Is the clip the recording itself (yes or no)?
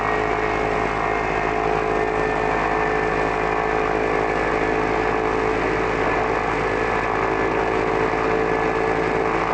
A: yes